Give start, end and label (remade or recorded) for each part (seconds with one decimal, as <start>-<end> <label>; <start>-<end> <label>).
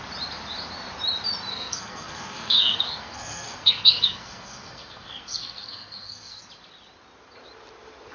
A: 0.0-1.5 recorded; 1.5-6.4 remade; 6.4-8.1 recorded